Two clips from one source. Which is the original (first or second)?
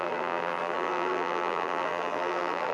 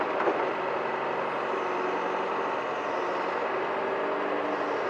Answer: second